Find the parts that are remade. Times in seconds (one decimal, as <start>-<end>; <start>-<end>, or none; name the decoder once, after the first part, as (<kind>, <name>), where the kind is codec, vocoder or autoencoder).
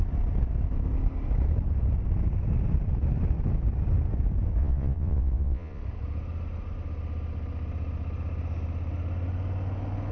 4.6-5.8 (vocoder, Vocos)